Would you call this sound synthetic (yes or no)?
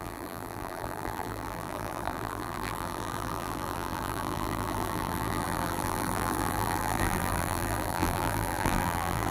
yes